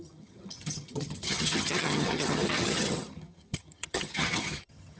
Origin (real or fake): fake